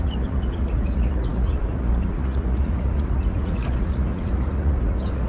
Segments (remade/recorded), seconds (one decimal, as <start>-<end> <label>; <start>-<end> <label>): 0.0-5.3 remade